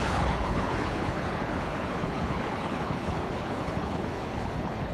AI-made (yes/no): yes